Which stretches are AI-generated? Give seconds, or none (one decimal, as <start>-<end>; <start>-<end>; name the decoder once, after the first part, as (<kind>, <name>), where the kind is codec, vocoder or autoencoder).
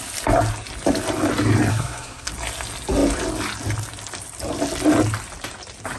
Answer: 1.7-2.3 (codec, SNAC)